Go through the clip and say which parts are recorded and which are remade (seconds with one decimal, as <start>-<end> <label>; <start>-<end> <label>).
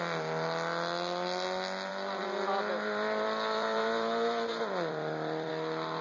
0.0-1.9 recorded; 1.9-5.5 remade; 5.5-6.0 recorded